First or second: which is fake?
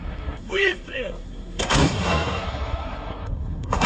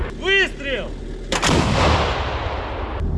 first